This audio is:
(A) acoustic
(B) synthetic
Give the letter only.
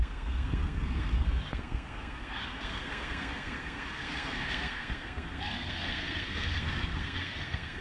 B